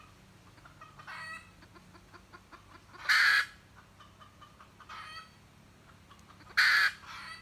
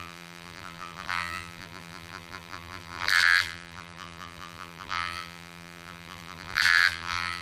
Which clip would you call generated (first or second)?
second